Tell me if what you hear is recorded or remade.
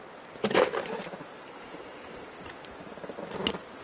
recorded